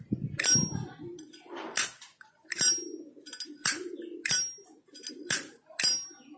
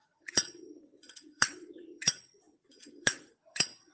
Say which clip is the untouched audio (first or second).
first